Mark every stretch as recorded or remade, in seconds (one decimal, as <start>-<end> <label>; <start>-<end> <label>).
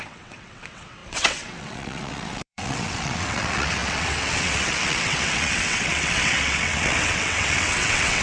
0.0-8.2 remade